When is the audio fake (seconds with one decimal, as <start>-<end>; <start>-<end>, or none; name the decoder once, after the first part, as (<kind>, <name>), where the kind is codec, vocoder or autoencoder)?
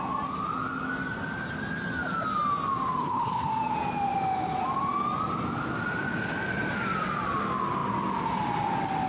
3.0-3.5 (codec, HILCodec)